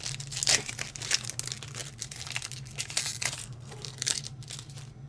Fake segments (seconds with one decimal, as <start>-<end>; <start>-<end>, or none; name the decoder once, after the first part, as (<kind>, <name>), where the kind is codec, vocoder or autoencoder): 3.4-4.2 (codec, SNAC)